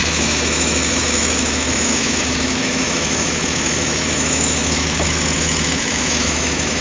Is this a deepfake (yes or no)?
yes